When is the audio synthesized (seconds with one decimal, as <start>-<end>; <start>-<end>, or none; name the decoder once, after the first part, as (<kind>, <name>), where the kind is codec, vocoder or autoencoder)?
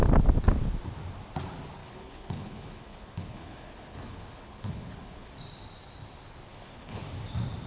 1.8-5.3 (codec, HILCodec); 6.5-7.0